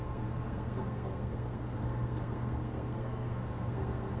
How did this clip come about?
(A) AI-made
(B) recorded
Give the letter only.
A